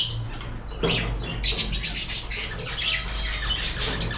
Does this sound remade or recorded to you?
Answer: recorded